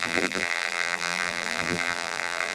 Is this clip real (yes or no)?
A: no